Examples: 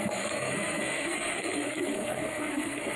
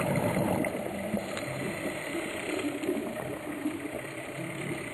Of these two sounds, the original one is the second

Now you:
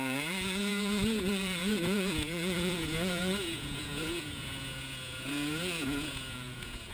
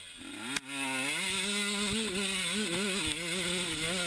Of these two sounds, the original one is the second